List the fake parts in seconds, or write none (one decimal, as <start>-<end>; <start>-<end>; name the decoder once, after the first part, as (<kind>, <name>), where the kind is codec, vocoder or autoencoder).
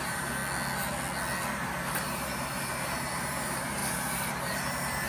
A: 0.0-0.4 (vocoder, BigVGAN v2); 1.5-5.1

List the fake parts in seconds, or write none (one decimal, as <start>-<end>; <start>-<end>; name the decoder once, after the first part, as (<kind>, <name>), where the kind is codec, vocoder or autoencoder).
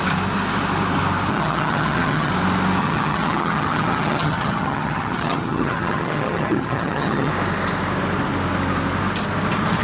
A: 1.3-2.3 (vocoder, HiFi-GAN); 2.8-7.3